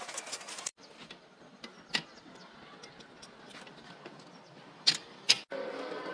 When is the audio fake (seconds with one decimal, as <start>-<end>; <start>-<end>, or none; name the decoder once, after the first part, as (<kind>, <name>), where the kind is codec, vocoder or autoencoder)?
none